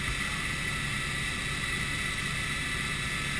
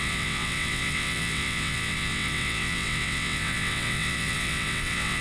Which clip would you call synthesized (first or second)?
second